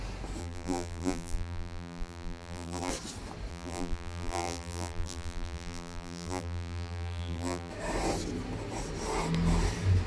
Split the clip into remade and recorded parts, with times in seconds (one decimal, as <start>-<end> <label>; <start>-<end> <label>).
0.0-0.4 recorded; 0.4-2.9 remade; 2.9-3.5 recorded; 3.5-7.7 remade; 7.7-10.1 recorded